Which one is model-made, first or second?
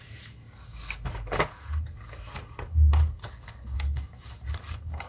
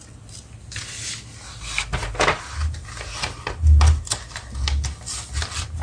first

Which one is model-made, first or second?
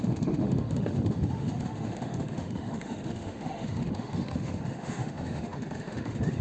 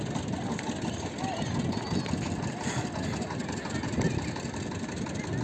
first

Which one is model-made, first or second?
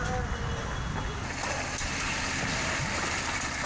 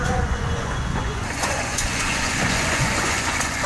second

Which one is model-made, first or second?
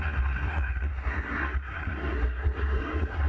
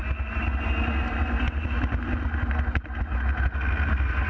first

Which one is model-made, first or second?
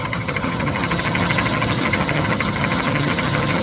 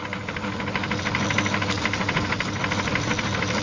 first